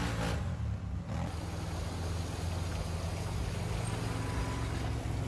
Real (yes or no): yes